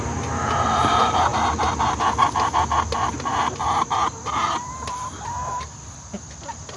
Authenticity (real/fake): real